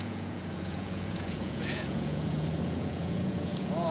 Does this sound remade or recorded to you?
remade